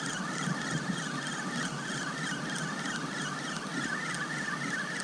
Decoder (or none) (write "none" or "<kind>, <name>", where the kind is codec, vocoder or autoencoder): none